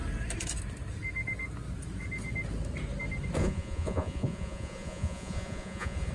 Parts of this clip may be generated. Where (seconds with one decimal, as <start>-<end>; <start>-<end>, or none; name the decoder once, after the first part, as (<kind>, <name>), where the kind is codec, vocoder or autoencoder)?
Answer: 3.4-6.1 (vocoder, Vocos)